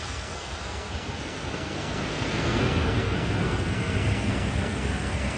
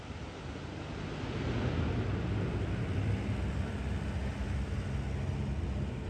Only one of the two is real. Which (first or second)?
second